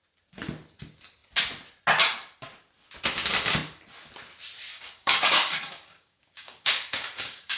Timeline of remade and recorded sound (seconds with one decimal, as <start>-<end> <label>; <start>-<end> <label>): 0.0-4.7 recorded; 4.7-7.6 remade

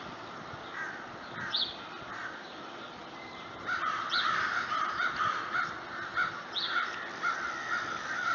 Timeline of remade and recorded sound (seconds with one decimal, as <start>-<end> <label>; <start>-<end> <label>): 0.0-8.3 recorded

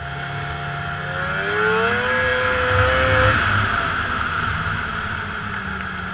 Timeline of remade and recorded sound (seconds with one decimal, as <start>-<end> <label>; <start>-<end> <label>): 0.0-6.1 recorded

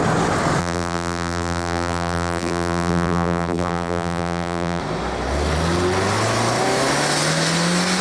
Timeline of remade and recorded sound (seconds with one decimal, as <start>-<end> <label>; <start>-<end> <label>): 0.0-0.6 recorded; 0.6-4.8 remade; 4.8-8.0 recorded

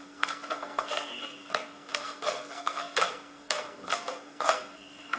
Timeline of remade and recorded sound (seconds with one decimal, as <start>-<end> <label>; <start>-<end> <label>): 0.0-5.2 remade